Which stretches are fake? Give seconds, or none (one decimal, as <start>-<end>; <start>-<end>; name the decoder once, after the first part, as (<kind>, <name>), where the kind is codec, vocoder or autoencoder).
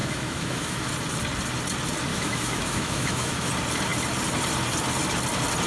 0.0-0.9 (autoencoder, DAC-VAE); 2.1-3.5